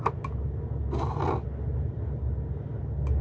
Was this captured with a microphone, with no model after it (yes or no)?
yes